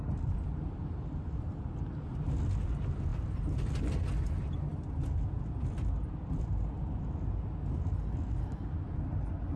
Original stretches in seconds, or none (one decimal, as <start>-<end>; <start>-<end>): 0.0-9.6